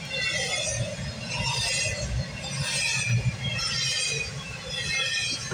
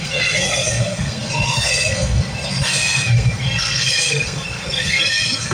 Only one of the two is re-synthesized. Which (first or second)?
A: second